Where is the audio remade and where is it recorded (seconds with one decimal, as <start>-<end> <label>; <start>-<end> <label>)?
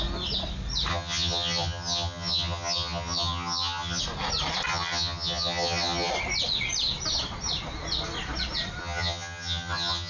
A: 0.0-0.9 recorded; 0.9-4.0 remade; 4.0-4.7 recorded; 4.7-6.1 remade; 6.1-8.8 recorded; 8.8-10.1 remade